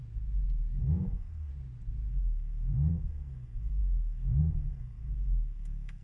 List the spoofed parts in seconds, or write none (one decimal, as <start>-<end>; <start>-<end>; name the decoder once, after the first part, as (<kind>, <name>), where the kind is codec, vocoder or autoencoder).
0.8-1.5 (codec, SNAC); 2.1-6.0